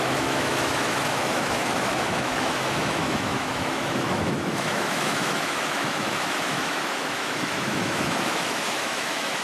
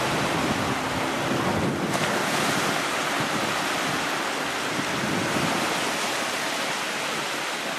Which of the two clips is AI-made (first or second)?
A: first